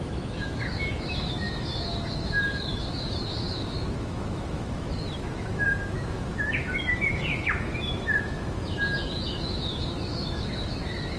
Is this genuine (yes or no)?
no